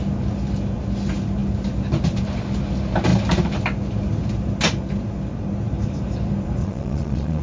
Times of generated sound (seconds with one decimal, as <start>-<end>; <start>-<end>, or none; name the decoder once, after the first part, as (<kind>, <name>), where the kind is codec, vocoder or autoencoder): 6.6-7.4 (vocoder, Vocos)